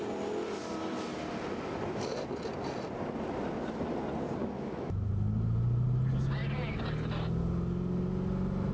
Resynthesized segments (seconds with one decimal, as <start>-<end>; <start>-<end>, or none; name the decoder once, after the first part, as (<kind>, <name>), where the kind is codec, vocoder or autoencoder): 4.4-5.1 (autoencoder, DAC-VAE)